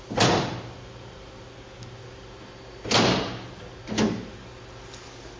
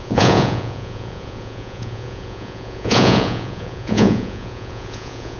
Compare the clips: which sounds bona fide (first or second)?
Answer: first